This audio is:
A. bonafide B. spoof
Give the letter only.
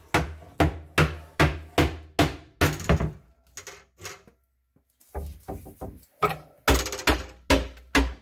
A